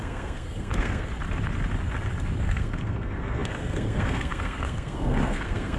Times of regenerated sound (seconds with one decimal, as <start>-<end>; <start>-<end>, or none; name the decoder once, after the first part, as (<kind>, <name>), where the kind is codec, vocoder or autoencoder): 0.0-1.1 (codec, SNAC); 2.4-5.8